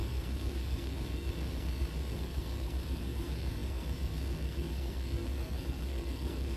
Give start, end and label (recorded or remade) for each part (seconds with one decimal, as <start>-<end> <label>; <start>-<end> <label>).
0.0-6.6 remade